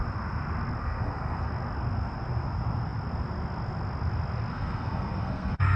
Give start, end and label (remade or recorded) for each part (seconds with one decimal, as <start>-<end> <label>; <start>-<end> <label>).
0.0-0.8 recorded; 0.8-1.5 remade; 1.5-4.5 recorded; 4.5-5.8 remade